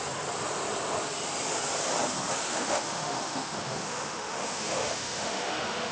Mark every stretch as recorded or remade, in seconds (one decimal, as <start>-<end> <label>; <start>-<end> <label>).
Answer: 0.0-2.5 recorded; 2.5-5.9 remade